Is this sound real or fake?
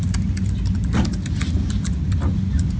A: real